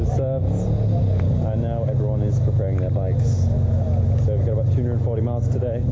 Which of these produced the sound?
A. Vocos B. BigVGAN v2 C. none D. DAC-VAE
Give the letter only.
C